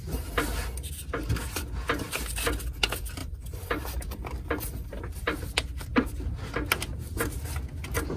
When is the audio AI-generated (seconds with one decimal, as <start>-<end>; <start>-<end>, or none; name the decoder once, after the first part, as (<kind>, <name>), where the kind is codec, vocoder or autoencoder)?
3.2-5.0 (vocoder, BigVGAN v2)

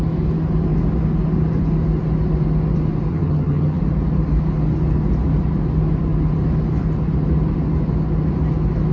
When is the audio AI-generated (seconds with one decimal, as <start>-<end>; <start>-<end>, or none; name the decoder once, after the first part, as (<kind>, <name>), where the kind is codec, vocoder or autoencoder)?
3.1-3.8 (vocoder, HiFi-GAN)

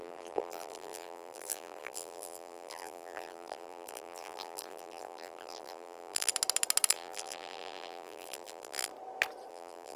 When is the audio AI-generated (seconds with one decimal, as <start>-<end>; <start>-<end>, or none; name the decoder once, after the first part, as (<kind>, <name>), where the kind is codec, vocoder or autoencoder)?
0.0-6.3 (vocoder, BigVGAN v2); 6.9-8.9; 9.5-10.0

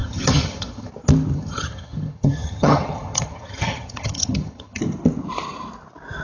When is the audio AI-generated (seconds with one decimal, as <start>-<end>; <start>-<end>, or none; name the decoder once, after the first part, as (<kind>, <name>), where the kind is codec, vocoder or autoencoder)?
0.0-0.9 (vocoder, HiFi-GAN); 1.3-4.8

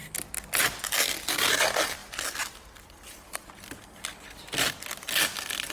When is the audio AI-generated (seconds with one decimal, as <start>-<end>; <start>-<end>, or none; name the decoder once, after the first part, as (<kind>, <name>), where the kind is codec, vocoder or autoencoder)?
none

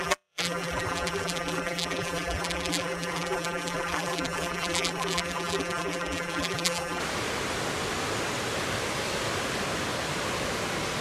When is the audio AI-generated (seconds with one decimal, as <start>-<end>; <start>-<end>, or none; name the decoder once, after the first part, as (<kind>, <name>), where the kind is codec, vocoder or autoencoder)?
0.0-7.0 (vocoder, BigVGAN v2)

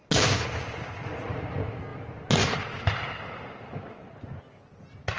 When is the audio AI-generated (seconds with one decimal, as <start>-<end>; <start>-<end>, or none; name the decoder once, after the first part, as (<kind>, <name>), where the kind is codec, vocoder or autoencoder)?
none

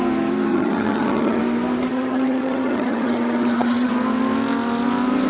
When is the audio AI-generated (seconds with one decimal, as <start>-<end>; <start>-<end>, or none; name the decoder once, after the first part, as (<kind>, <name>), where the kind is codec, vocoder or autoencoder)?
0.5-1.4 (vocoder, HiFi-GAN); 1.9-3.9